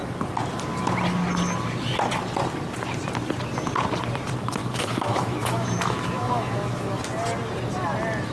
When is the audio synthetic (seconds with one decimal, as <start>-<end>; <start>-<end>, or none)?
4.6-7.0

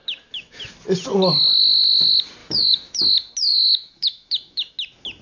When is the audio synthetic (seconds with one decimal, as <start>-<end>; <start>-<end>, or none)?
0.0-0.6; 2.4-3.0; 3.5-4.7

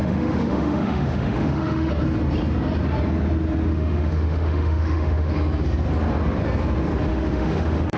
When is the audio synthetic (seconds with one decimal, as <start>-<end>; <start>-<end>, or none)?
0.0-1.9; 3.7-5.3; 7.1-8.0

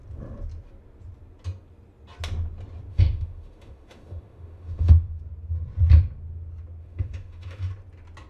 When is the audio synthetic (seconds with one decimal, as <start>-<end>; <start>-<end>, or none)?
2.9-5.2; 6.8-7.7

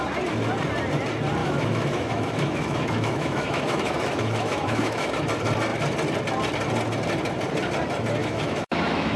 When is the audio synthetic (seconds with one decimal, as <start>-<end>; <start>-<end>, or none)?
1.4-5.1; 8.2-9.2

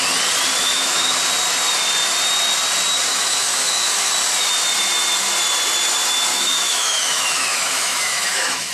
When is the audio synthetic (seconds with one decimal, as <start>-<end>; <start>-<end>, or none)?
0.6-1.2; 3.1-4.1; 6.3-8.7

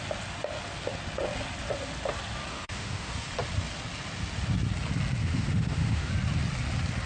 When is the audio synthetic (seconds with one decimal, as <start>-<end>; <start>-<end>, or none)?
2.5-3.1; 5.2-6.1

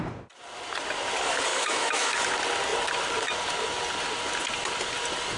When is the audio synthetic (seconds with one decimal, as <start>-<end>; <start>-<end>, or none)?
1.5-2.1